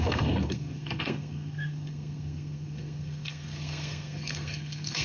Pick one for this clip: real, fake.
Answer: fake